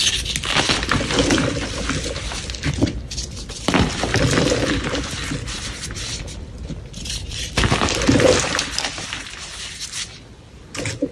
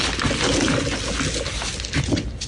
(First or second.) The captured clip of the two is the second